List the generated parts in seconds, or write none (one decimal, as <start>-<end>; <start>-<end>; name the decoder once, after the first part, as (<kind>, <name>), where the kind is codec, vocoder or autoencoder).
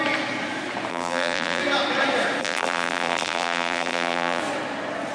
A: 0.9-1.6 (vocoder, BigVGAN v2); 2.4-4.4